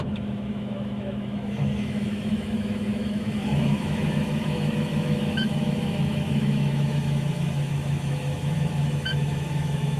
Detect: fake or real fake